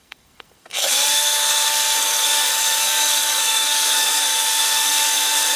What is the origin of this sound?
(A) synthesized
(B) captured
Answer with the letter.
A